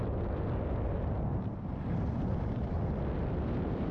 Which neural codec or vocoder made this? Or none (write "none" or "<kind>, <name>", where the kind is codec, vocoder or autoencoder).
none